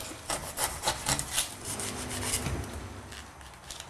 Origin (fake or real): real